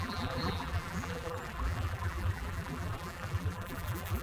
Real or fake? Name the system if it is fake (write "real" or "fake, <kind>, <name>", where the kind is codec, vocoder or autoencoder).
fake, vocoder, BigVGAN v2